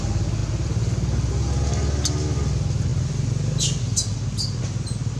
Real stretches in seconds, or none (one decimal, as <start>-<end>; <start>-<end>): 0.0-5.2